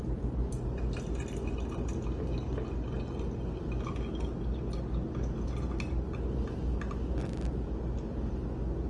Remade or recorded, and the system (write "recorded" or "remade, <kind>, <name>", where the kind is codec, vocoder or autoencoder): recorded